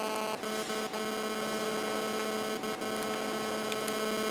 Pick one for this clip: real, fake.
real